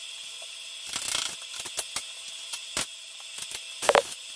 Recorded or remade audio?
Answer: recorded